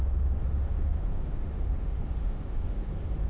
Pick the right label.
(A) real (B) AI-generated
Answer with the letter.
B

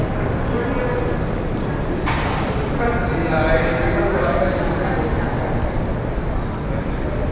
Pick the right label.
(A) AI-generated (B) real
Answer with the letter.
B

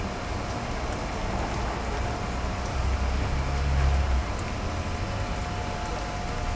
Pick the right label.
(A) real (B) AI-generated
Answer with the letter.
A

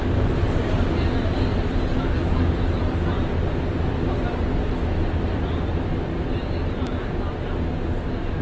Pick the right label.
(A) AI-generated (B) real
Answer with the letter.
B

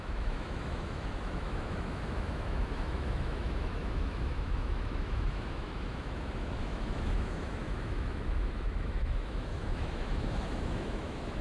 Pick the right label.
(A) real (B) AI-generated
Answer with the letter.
B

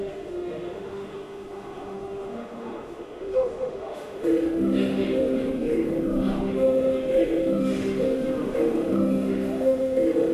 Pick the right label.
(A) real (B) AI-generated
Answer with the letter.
B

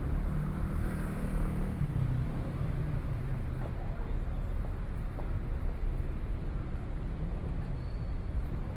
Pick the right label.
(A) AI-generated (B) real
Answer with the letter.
B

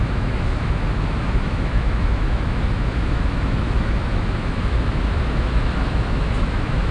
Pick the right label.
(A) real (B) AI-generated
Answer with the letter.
B